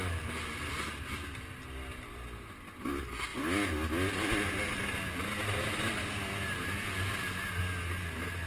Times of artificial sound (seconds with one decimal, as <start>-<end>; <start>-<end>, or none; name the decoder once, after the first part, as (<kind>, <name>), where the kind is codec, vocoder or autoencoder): none